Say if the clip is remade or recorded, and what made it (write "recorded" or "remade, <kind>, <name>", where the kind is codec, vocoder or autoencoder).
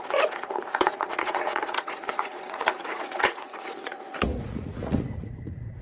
remade, vocoder, Vocos